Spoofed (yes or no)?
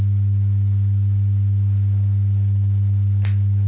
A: no